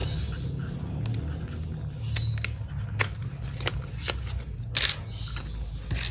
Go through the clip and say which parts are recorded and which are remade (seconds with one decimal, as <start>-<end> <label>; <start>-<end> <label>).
0.0-6.1 recorded